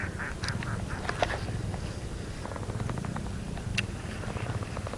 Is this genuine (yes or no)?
no